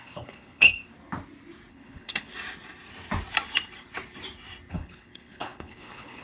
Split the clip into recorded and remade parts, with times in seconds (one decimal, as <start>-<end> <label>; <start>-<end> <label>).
0.0-0.8 remade; 0.8-1.7 recorded; 1.7-2.3 remade; 2.3-4.7 recorded; 4.7-6.2 remade